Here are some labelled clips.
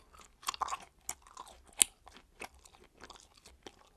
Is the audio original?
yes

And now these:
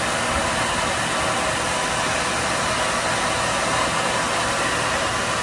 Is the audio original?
yes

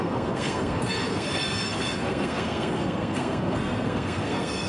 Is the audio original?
no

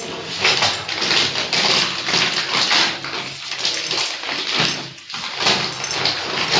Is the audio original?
yes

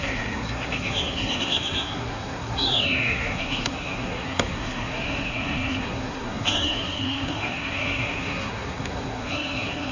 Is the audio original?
no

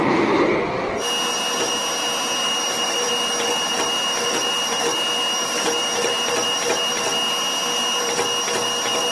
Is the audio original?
yes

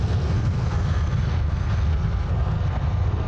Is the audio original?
no